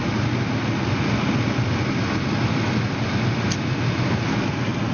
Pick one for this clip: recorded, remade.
recorded